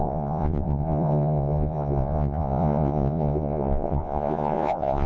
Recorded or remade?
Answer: remade